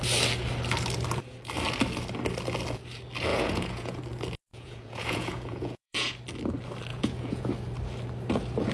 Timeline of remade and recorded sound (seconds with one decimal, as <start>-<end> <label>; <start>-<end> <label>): 0.0-3.3 recorded; 3.3-4.0 remade; 4.0-4.5 recorded; 4.5-6.2 remade; 6.2-6.9 recorded; 6.9-7.5 remade; 7.5-8.7 recorded